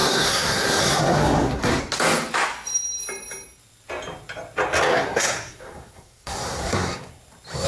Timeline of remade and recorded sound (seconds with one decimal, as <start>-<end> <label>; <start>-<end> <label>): 0.0-1.8 remade; 1.8-4.9 recorded; 4.9-7.1 remade; 7.1-7.7 recorded